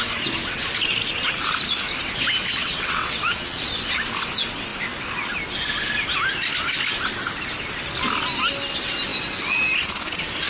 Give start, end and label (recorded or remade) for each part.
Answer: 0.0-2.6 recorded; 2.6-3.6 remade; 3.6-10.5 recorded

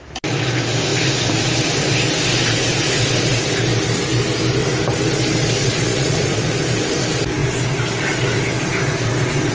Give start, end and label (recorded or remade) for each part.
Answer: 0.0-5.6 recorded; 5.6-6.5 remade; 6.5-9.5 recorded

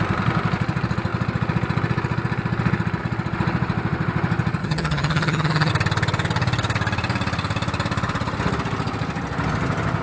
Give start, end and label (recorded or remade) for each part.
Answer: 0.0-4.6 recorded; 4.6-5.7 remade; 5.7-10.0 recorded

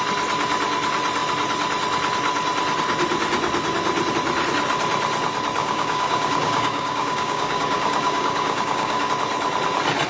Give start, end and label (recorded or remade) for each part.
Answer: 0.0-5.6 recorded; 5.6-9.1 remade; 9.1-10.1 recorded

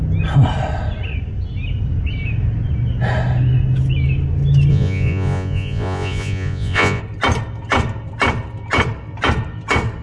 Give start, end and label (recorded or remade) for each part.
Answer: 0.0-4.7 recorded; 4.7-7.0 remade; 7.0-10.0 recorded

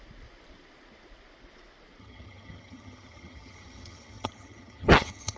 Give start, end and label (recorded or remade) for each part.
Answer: 0.0-2.0 recorded; 2.0-5.4 remade